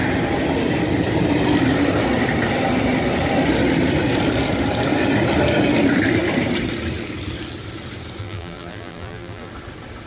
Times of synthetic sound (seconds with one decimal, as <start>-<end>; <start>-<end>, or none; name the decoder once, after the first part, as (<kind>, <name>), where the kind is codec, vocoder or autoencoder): 8.2-9.5 (vocoder, BigVGAN v2)